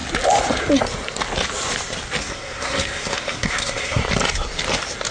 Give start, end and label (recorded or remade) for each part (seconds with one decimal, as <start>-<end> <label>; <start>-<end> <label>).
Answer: 0.0-2.2 recorded; 2.2-4.0 remade; 4.0-5.1 recorded